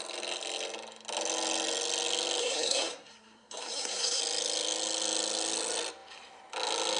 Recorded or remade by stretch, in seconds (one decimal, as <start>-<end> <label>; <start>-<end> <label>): 0.0-2.4 recorded; 2.4-4.2 remade; 4.2-7.0 recorded